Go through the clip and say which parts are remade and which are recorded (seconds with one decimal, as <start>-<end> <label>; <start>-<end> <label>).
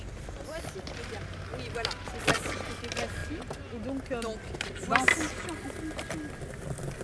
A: 0.0-7.0 recorded